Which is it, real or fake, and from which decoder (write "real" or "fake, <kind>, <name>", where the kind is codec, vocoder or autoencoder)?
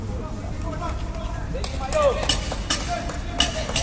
real